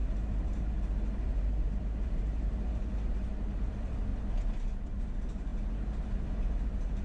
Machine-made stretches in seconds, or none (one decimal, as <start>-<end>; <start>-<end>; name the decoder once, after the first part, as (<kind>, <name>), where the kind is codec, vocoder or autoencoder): 0.0-4.1 (vocoder, BigVGAN v2); 5.0-7.0